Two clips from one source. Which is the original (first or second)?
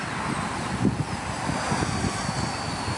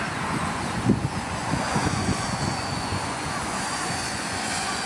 first